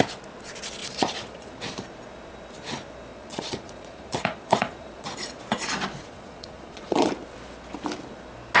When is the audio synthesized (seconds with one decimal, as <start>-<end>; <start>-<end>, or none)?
0.8-1.5; 3.1-5.4; 6.0-7.1